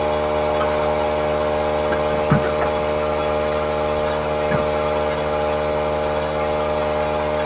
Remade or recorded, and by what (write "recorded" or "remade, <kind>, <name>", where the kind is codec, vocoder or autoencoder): recorded